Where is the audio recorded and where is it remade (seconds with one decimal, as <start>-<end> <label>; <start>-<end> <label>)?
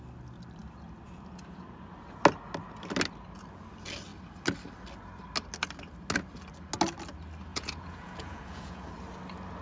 0.0-7.5 recorded; 7.5-8.9 remade; 8.9-9.6 recorded